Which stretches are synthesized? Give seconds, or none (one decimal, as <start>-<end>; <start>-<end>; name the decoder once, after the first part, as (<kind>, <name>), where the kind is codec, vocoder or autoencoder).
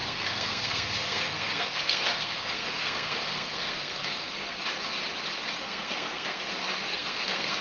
0.0-4.6 (codec, SNAC); 5.6-6.5; 6.9-7.6